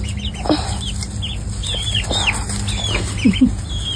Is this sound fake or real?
real